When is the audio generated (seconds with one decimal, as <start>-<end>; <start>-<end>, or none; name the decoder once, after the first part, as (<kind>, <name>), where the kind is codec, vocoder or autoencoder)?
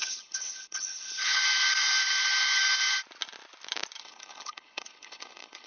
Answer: 0.0-1.4 (codec, HILCodec); 4.0-5.7